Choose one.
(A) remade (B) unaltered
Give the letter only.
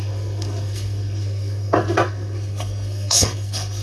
A